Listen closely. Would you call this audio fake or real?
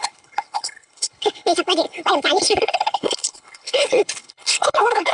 fake